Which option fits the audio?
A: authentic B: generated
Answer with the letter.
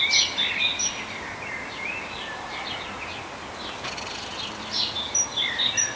A